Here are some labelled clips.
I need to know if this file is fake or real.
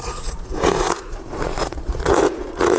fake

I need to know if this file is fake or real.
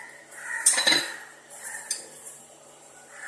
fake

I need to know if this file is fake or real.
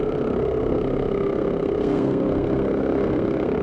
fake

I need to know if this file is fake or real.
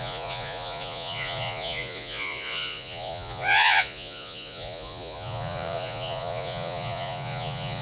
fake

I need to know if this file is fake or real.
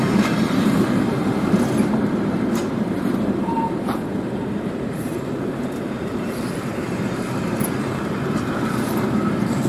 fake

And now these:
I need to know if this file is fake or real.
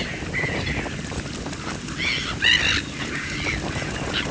real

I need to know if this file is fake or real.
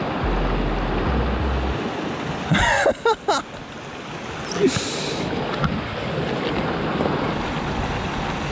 real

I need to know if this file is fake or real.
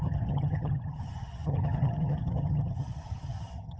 fake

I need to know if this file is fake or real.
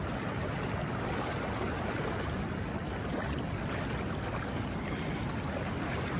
real